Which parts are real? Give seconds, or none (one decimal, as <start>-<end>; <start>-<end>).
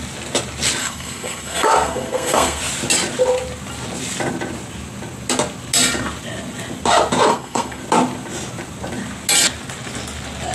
0.0-0.8; 2.6-7.3; 7.8-10.5